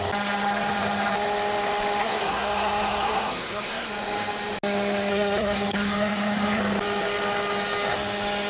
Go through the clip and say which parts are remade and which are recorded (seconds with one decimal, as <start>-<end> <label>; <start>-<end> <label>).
0.0-2.0 recorded; 2.0-3.9 remade; 3.9-5.1 recorded; 5.1-6.6 remade; 6.6-8.5 recorded